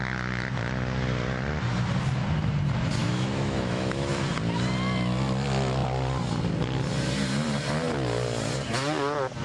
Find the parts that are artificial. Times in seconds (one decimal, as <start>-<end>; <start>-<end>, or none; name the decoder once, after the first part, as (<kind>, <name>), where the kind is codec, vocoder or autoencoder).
3.0-4.1 (autoencoder, DAC-VAE)